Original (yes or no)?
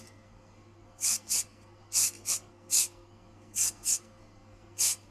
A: no